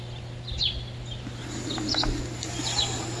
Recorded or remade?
recorded